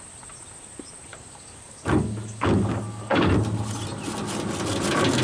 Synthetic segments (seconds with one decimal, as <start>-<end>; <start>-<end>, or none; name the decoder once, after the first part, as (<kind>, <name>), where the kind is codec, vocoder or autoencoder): 1.1-3.3 (codec, DAC)